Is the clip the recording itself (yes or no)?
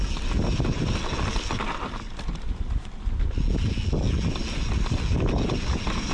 yes